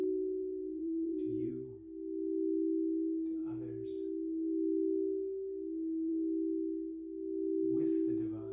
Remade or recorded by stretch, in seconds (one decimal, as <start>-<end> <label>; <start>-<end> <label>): 0.0-1.5 remade; 1.5-8.5 recorded